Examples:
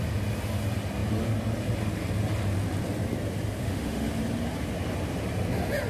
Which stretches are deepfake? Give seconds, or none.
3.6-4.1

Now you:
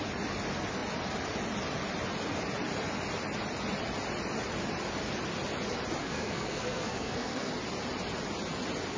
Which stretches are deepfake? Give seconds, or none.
6.0-7.5

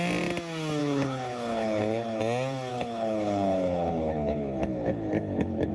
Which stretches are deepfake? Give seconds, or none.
0.8-2.2; 2.7-5.7

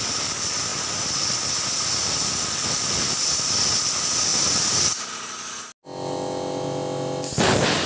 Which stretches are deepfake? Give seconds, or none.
none

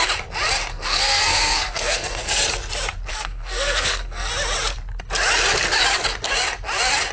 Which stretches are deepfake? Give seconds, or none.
0.7-2.4; 3.1-4.3

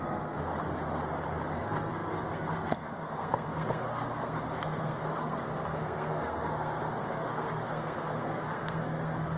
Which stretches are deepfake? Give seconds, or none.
0.0-0.4; 1.5-9.4

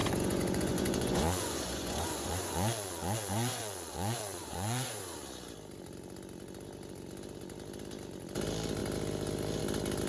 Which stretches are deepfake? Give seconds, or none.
0.0-4.9

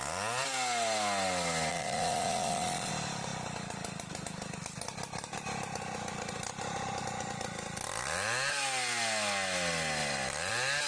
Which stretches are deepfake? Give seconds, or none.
1.7-2.9